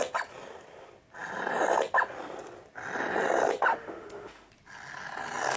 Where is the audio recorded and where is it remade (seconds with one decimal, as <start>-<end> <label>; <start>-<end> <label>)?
0.0-3.7 recorded; 3.7-4.5 remade; 4.5-5.6 recorded